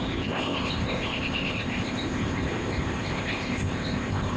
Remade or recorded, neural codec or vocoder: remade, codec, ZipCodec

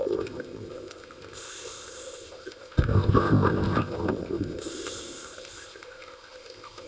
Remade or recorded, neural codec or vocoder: remade, codec, ZipCodec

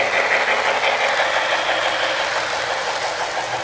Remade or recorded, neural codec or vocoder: recorded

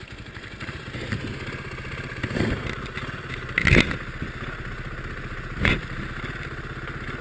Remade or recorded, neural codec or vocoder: recorded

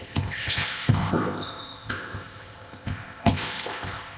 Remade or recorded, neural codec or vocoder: remade, codec, ZipCodec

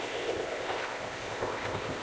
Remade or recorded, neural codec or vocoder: remade, codec, ZipCodec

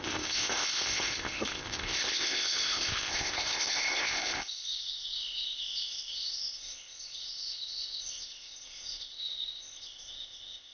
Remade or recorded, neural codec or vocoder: remade, codec, ZipCodec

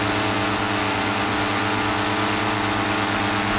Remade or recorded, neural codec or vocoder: recorded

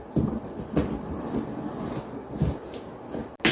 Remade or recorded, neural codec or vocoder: recorded